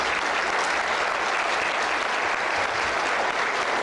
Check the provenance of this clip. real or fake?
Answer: real